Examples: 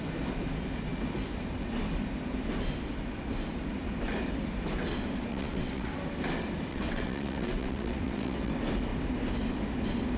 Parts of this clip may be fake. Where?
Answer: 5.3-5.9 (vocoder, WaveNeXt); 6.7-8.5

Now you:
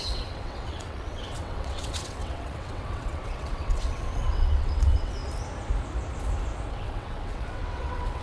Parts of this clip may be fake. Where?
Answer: 0.0-5.2 (vocoder, WaveNeXt); 6.7-8.2

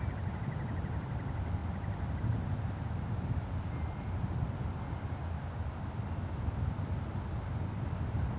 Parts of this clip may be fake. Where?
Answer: none

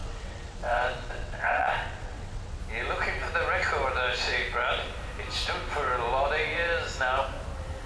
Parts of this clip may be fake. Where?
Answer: 0.0-2.6 (vocoder, WaveNeXt)